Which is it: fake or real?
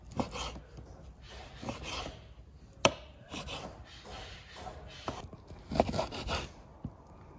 real